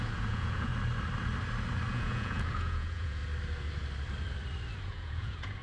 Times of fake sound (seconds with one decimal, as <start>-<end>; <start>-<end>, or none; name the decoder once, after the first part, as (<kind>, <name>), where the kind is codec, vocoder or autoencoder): 0.0-0.7 (vocoder, Vocos); 1.9-3.2; 4.9-5.6